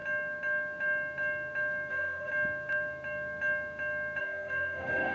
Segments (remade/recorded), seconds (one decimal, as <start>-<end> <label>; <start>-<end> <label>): 0.0-1.9 recorded; 1.9-2.3 remade; 2.3-4.2 recorded; 4.2-5.1 remade